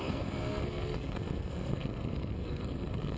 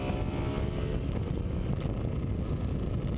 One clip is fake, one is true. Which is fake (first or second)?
first